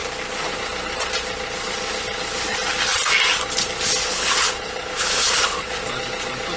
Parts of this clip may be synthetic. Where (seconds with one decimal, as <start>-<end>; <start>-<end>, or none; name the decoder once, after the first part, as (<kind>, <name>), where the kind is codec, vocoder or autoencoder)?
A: 4.0-5.8 (codec, HILCodec)

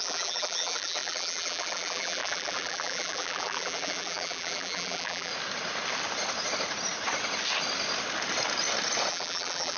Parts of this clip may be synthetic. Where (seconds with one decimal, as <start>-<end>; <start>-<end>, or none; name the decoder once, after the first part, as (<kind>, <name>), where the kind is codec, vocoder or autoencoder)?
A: 0.0-5.3 (vocoder, BigVGAN v2); 9.1-9.8

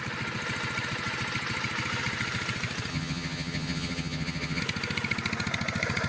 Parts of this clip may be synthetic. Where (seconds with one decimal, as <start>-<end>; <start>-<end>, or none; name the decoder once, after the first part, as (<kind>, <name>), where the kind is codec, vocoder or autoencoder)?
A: 2.9-4.6 (vocoder, HiFi-GAN)

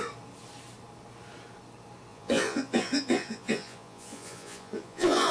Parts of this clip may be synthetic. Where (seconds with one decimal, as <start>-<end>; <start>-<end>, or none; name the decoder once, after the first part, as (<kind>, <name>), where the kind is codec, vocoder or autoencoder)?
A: 2.1-5.3 (vocoder, Vocos)

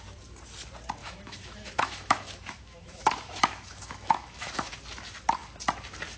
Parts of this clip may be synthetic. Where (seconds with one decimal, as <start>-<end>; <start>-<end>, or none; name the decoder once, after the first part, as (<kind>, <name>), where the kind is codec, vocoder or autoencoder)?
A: 1.0-4.7 (autoencoder, DAC-VAE)

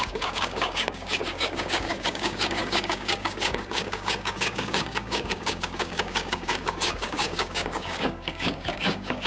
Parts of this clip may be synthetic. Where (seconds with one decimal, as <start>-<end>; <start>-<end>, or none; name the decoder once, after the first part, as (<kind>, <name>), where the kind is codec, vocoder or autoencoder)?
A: 0.0-9.3 (codec, DAC)

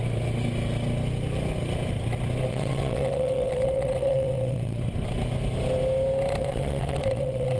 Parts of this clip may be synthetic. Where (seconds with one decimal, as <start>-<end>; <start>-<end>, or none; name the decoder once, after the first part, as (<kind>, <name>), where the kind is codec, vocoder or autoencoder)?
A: 2.5-4.8 (vocoder, WaveNeXt); 6.4-7.6

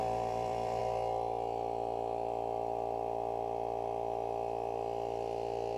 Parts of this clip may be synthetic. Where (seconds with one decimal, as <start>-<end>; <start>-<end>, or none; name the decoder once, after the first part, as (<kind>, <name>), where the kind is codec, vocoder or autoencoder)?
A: 0.0-0.8 (vocoder, BigVGAN v2)